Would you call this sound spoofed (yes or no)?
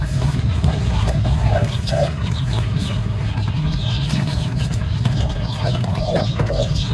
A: yes